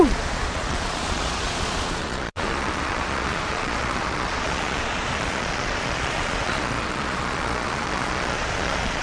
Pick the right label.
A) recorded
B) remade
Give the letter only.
B